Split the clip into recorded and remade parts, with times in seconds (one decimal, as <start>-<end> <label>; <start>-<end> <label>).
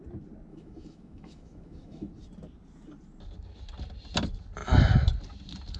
0.0-0.5 recorded; 0.5-2.1 remade; 2.1-5.8 recorded